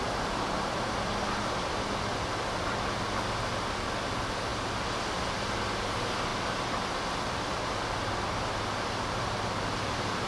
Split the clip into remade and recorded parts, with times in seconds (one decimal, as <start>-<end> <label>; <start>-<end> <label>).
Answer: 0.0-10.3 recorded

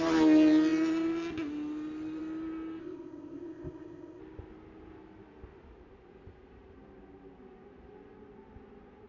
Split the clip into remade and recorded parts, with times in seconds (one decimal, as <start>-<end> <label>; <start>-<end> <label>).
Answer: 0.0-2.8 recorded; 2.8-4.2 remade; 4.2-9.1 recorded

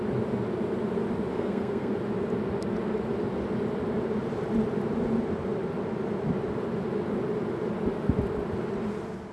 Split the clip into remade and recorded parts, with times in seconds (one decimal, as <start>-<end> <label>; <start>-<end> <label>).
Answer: 0.0-1.3 recorded; 1.3-1.9 remade; 1.9-9.3 recorded

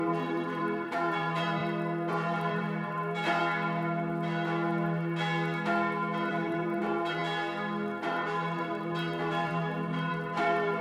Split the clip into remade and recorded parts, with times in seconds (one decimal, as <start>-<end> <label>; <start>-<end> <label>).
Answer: 0.0-1.6 remade; 1.6-2.1 recorded; 2.1-3.4 remade; 3.4-6.3 recorded; 6.3-7.2 remade; 7.2-8.0 recorded; 8.0-10.8 remade